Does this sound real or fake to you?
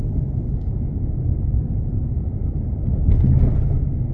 fake